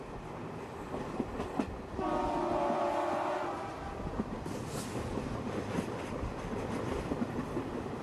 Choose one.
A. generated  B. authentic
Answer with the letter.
B